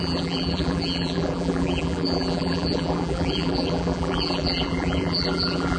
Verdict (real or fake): fake